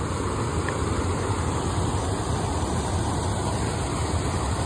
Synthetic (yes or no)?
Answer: no